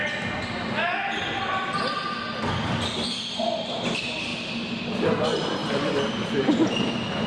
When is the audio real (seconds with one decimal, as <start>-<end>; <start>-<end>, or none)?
0.0-3.4; 4.3-5.1